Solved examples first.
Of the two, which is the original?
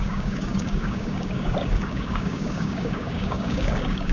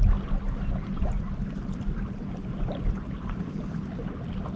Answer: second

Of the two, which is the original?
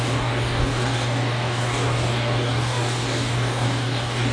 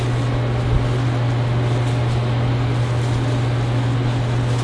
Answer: second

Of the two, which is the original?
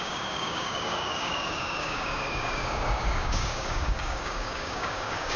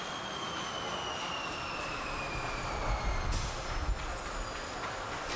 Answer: second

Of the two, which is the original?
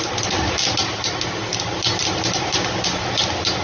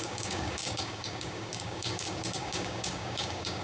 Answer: first